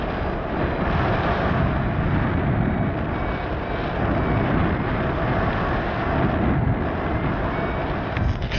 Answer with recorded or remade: recorded